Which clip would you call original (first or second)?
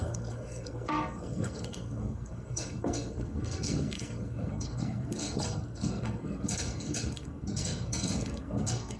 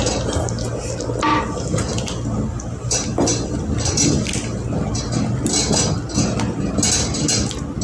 second